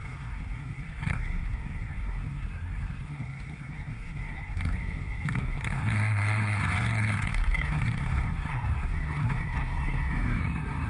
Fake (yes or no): yes